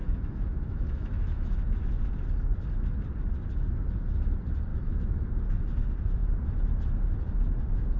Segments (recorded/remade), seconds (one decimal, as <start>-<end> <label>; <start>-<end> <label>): 0.0-2.0 remade; 2.0-4.7 recorded; 4.7-5.4 remade; 5.4-8.0 recorded